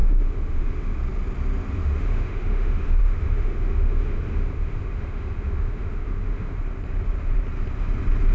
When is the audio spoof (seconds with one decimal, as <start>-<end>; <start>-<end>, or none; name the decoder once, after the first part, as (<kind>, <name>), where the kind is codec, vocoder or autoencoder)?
0.0-1.0 (autoencoder, DAC-VAE); 1.8-6.6